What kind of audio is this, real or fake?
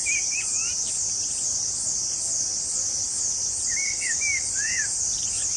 real